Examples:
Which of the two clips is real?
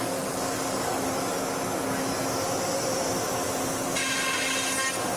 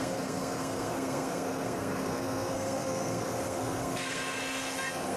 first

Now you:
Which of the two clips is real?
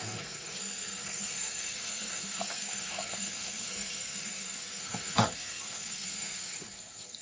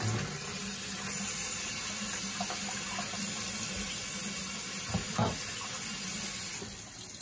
second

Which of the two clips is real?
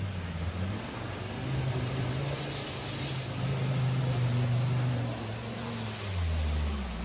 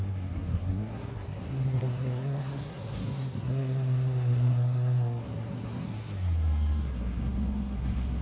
first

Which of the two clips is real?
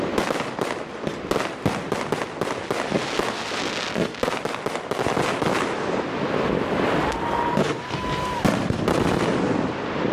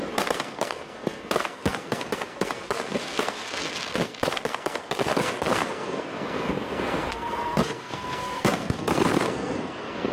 first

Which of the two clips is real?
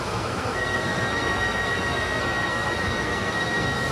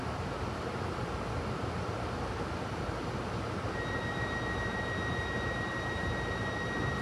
second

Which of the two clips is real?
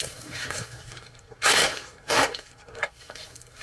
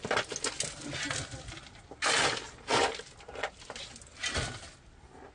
second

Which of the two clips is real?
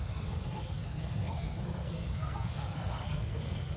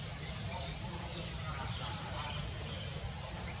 second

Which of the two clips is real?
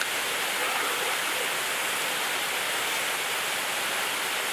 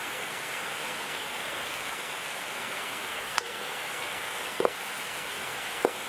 first